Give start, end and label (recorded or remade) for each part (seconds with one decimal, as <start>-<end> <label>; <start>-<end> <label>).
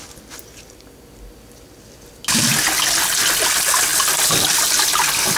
0.0-5.4 recorded